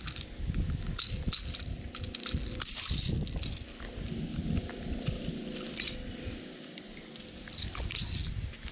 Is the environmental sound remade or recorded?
recorded